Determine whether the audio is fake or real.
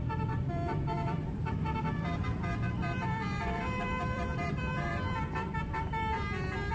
fake